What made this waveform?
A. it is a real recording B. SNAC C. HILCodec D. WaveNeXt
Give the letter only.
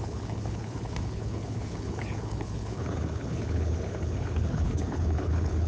C